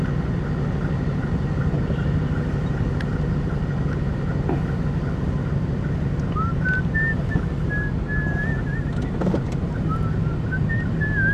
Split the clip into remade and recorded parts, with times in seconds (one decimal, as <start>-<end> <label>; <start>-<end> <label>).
0.0-11.3 recorded